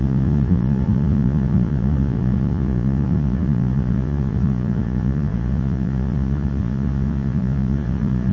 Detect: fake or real fake